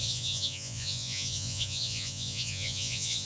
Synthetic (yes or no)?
yes